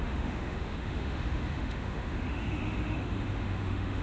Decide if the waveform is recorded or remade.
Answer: remade